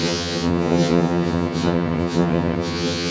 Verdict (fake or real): fake